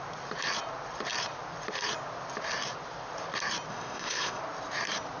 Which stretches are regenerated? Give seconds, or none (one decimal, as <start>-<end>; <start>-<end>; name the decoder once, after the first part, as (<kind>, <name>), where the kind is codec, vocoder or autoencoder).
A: 3.7-4.4 (codec, ZipCodec)